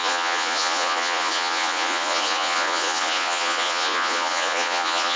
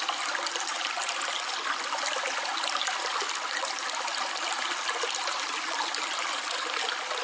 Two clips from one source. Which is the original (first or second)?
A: second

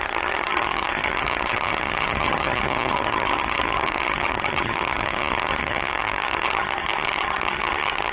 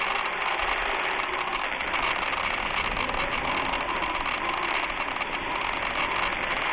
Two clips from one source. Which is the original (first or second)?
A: second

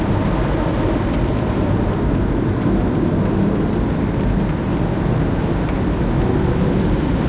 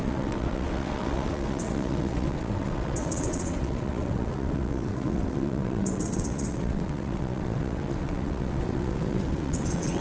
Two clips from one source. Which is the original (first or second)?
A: first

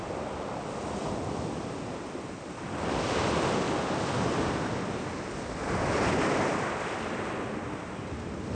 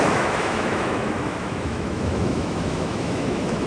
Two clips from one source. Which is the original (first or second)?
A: first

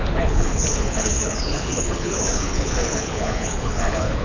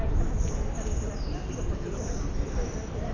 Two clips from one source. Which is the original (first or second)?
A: second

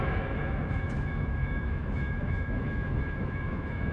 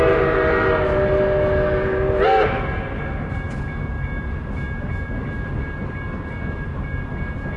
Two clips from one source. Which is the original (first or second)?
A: second